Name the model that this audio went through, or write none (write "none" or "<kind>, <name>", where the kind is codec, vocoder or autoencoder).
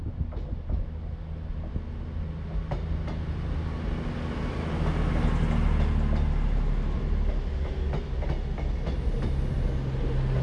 none